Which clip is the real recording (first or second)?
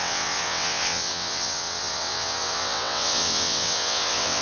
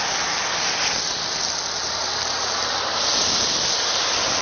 second